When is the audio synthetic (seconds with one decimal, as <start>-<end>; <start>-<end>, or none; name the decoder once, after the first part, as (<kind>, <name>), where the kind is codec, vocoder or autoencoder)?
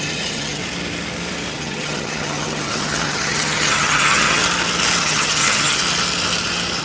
0.0-0.6 (vocoder, HiFi-GAN); 1.5-4.4; 5.0-5.8